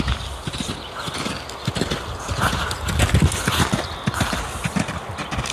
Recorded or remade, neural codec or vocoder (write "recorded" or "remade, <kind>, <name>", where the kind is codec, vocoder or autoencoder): recorded